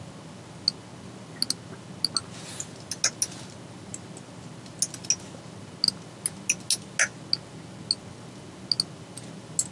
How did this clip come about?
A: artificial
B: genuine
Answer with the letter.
B